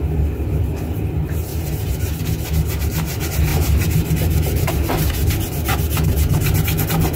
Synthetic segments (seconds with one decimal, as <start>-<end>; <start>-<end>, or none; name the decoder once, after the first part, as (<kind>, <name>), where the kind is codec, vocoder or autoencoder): 1.5-2.2 (vocoder, BigVGAN v2); 3.5-4.7